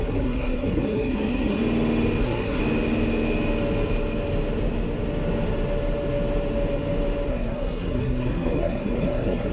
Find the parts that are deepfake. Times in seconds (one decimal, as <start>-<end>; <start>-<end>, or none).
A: 0.0-1.6; 2.2-2.6; 7.3-9.5